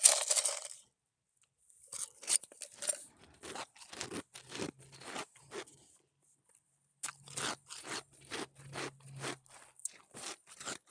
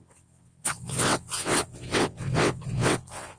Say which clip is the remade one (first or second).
second